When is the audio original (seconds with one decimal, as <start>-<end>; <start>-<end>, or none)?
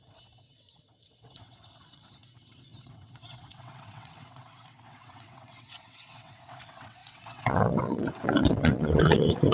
none